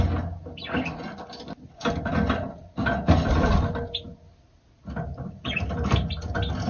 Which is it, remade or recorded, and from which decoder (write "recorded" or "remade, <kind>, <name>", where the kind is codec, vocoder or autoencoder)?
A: recorded